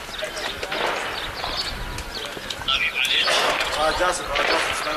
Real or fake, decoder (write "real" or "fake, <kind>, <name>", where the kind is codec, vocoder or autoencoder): real